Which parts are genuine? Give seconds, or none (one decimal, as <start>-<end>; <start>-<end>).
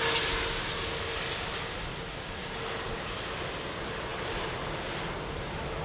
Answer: 0.0-5.8